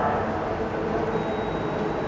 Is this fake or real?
real